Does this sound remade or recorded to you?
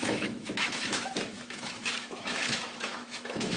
remade